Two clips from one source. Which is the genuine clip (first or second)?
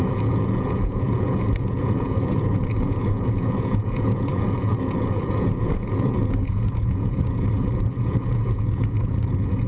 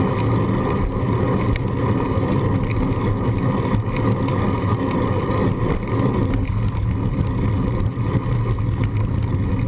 second